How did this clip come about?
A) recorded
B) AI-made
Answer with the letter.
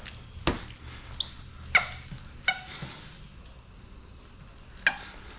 A